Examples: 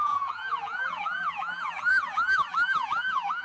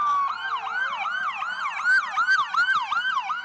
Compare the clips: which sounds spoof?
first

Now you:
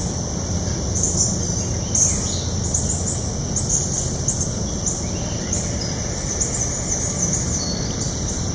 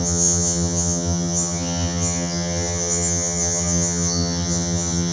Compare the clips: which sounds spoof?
second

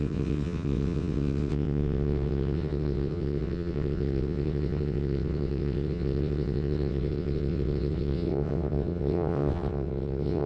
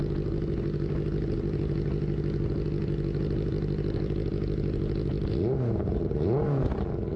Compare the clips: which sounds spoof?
first